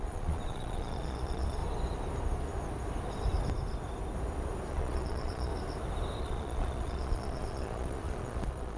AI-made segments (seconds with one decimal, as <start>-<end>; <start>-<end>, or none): 0.0-1.6; 4.7-5.5; 6.2-8.8